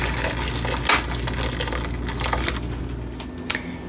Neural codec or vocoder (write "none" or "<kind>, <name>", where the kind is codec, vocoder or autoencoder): none